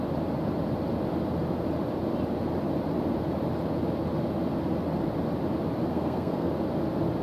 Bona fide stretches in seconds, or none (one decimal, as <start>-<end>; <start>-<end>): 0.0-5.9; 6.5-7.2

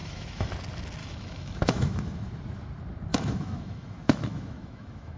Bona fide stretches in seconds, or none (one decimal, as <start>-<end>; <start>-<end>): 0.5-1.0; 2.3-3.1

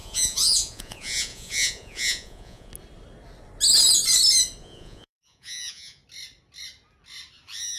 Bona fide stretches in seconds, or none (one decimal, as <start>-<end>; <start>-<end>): 2.7-4.6; 6.0-7.8

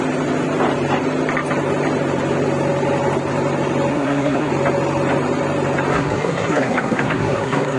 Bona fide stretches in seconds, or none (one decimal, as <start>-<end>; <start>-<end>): 0.0-3.9; 4.5-5.9

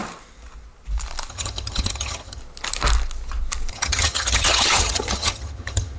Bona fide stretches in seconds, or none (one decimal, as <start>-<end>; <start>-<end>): 0.0-1.3; 2.4-3.7

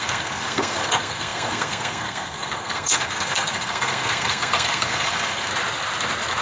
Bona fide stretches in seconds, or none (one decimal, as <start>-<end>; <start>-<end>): 5.5-6.4